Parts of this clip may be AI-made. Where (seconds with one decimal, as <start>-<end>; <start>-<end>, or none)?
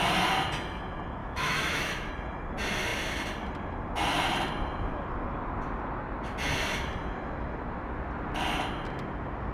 1.2-2.1